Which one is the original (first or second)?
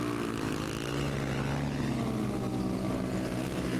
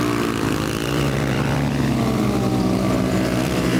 first